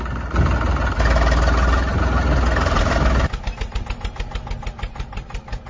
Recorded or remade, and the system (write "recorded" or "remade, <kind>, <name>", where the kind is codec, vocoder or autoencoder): recorded